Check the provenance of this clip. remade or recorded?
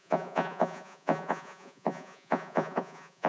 remade